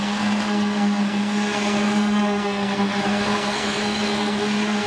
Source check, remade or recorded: remade